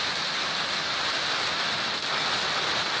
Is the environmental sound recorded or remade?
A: recorded